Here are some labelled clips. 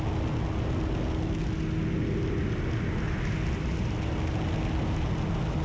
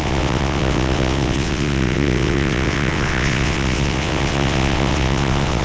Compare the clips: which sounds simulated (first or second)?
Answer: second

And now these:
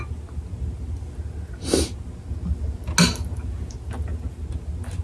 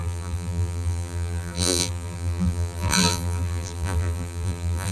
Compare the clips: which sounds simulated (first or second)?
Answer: second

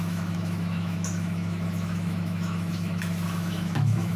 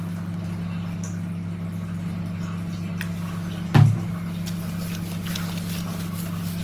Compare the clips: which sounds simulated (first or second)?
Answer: first